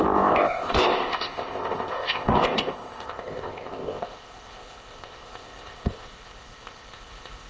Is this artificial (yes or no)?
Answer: yes